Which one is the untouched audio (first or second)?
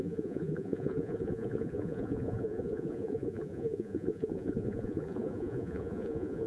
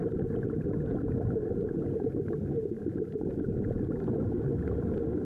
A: second